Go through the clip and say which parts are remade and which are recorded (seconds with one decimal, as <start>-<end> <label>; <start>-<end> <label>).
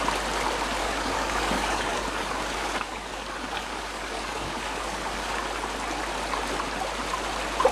0.0-0.8 recorded; 0.8-5.4 remade; 5.4-7.7 recorded